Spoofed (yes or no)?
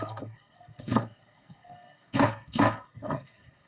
yes